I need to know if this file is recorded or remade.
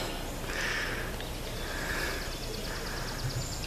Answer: recorded